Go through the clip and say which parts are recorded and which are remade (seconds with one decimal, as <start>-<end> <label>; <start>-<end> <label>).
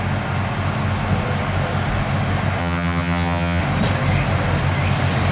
0.0-2.6 recorded; 2.6-3.6 remade; 3.6-5.3 recorded